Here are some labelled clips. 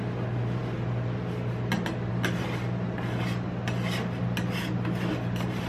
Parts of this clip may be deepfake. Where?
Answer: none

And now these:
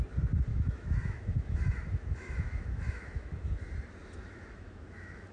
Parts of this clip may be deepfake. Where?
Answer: 0.5-3.6 (autoencoder, DAC-VAE); 4.0-5.3

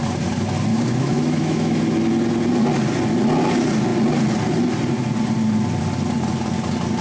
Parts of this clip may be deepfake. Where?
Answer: 0.7-1.8 (autoencoder, DAC-VAE)

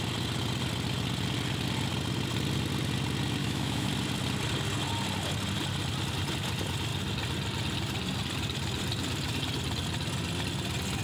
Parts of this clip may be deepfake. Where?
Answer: 3.4-3.9 (autoencoder, DAC-VAE)

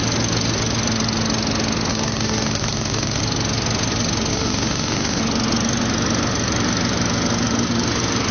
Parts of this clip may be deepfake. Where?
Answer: 1.9-3.2 (autoencoder, DAC-VAE); 4.3-5.2

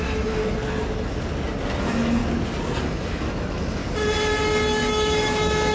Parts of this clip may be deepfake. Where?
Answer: 0.0-0.4 (autoencoder, DAC-VAE); 1.8-2.2; 2.8-3.8; 4.9-5.7

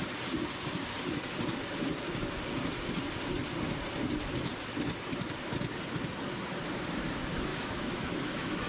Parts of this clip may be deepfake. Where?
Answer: 7.5-8.7 (autoencoder, DAC-VAE)